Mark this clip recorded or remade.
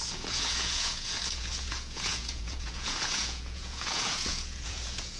remade